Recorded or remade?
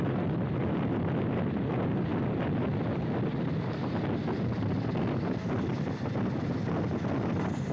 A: recorded